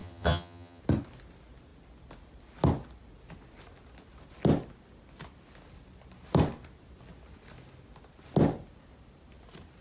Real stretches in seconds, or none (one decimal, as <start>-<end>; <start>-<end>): 0.8-9.8